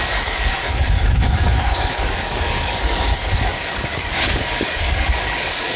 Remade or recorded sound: remade